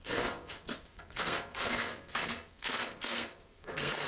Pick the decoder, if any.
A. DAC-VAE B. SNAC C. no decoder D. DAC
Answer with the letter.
B